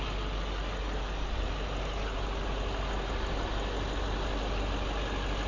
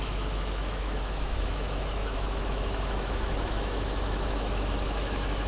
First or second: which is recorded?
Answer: first